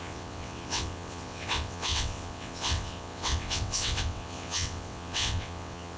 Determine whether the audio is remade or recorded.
remade